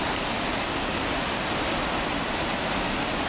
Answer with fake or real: real